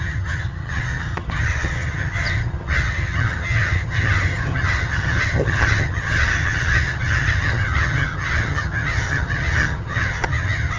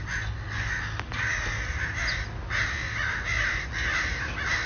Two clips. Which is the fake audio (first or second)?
first